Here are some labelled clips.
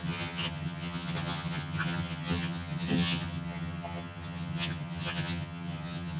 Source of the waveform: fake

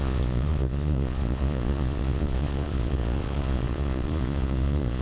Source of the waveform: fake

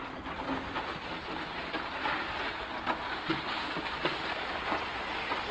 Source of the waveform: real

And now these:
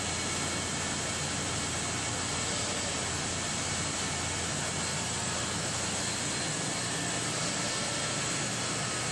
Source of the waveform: real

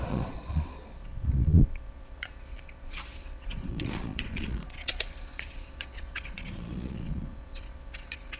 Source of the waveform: fake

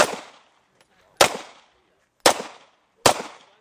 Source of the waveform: real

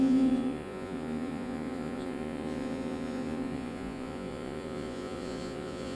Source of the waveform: fake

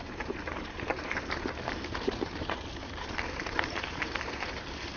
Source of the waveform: fake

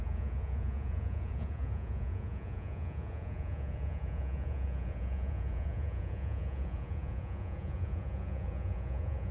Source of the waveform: fake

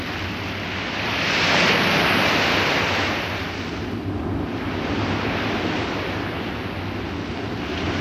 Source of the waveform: real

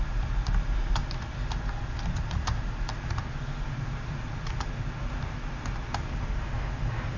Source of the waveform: fake